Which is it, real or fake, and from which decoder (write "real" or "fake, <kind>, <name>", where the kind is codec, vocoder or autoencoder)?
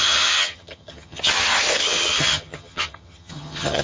fake, vocoder, HiFi-GAN